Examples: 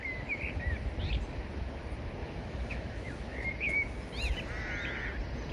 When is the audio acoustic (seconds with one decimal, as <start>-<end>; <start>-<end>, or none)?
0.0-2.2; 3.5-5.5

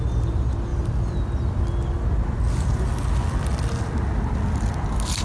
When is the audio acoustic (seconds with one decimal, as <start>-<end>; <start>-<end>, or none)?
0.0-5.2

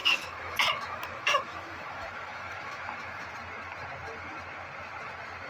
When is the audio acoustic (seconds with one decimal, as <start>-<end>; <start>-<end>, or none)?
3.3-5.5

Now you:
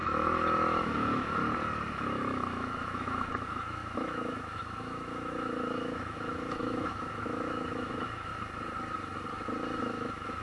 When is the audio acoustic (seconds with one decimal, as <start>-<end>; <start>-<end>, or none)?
1.4-1.9; 8.3-9.8

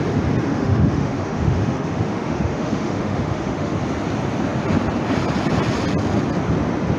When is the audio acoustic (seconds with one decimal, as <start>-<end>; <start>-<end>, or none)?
0.0-0.5; 3.7-7.0